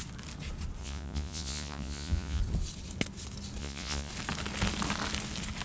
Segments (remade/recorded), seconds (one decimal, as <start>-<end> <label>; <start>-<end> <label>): 0.0-0.8 recorded; 0.8-2.4 remade; 2.4-3.6 recorded; 3.6-4.1 remade; 4.1-5.6 recorded

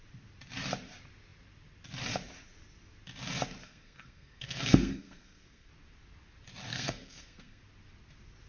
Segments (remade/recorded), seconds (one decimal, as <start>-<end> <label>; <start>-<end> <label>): 0.0-3.6 recorded; 3.6-5.7 remade; 5.7-6.7 recorded; 6.7-7.6 remade; 7.6-8.5 recorded

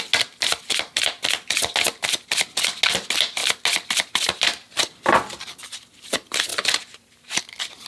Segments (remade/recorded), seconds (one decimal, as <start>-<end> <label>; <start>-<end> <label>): 0.0-6.5 recorded; 6.5-7.4 remade; 7.4-7.9 recorded